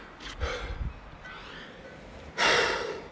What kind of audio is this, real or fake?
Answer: real